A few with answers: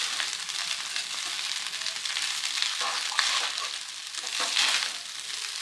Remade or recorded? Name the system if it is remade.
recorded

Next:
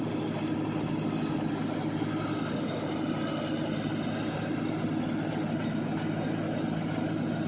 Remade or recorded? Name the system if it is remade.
recorded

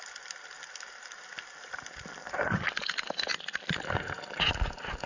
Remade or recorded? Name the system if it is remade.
recorded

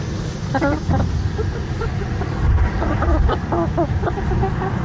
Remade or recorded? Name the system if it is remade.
recorded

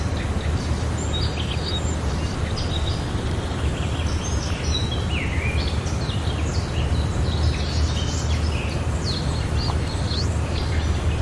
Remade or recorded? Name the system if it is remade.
recorded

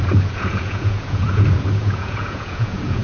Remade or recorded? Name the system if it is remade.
remade, vocoder, Vocos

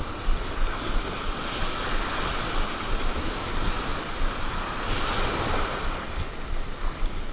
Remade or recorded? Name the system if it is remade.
recorded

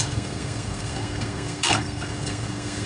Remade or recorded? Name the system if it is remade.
remade, codec, SNAC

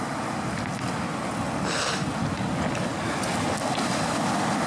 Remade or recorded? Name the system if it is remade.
recorded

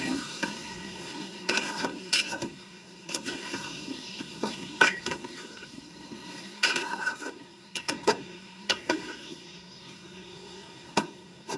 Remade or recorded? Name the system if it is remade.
remade, codec, SNAC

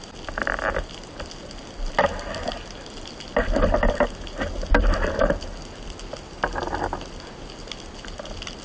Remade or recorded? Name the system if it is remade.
recorded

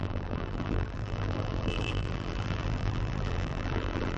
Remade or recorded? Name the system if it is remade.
remade, vocoder, BigVGAN v2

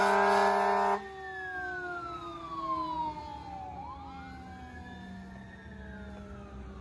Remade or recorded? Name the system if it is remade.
recorded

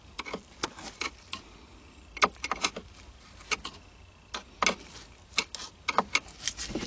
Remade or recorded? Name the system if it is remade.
recorded